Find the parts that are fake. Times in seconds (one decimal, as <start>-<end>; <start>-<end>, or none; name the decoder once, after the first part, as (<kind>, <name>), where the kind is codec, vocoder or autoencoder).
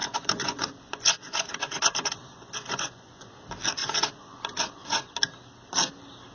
0.0-3.3 (vocoder, Vocos); 3.8-5.1